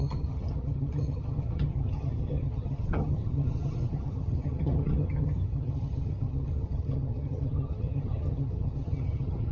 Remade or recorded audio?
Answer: remade